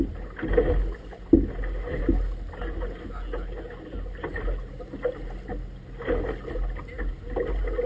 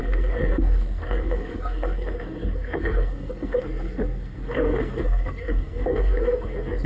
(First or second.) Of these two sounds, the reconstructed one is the second